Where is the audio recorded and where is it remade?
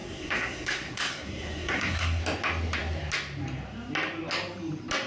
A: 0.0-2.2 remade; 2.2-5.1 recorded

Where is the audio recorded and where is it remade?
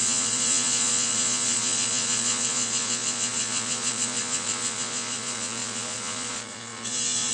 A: 0.0-7.3 remade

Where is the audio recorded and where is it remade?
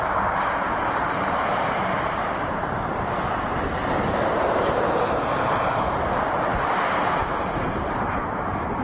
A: 0.0-3.8 remade; 3.8-4.6 recorded; 4.6-8.8 remade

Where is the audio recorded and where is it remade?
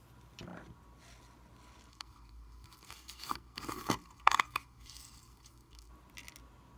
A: 0.0-1.9 recorded; 1.9-5.9 remade; 5.9-6.8 recorded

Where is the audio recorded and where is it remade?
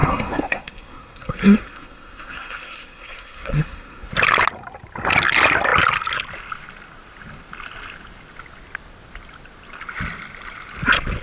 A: 0.0-4.1 remade; 4.1-11.2 recorded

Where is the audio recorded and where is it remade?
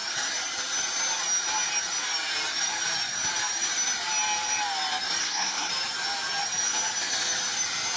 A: 0.0-5.2 recorded; 5.2-5.7 remade; 5.7-8.0 recorded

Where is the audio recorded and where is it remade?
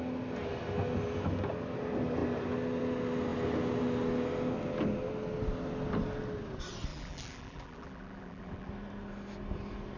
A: 0.0-6.9 recorded; 6.9-8.7 remade; 8.7-10.0 recorded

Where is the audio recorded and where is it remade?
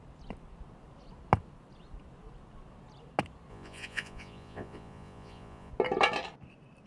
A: 0.0-3.5 recorded; 3.5-5.7 remade; 5.7-6.9 recorded